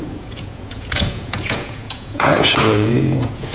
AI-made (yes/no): yes